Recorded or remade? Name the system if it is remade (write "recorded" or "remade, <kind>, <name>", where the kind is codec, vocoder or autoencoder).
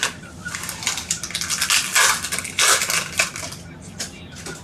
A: recorded